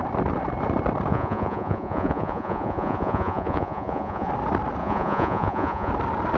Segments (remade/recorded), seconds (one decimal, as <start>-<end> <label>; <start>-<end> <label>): 0.0-1.1 recorded; 1.1-4.3 remade; 4.3-4.8 recorded; 4.8-5.9 remade; 5.9-6.4 recorded